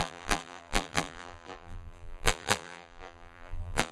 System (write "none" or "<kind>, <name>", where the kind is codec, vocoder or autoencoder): vocoder, BigVGAN v2